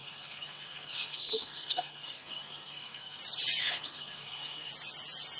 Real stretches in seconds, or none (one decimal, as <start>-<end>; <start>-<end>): 3.2-3.6; 4.7-5.4